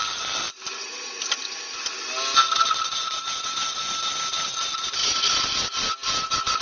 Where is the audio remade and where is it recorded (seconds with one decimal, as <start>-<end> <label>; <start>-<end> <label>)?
0.0-6.6 recorded